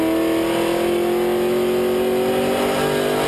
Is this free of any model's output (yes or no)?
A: yes